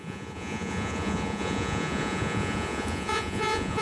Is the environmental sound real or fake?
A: fake